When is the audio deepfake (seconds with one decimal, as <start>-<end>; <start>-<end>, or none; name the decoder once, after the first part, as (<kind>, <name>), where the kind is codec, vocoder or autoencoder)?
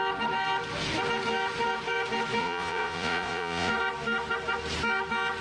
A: 2.4-3.7 (vocoder, Vocos)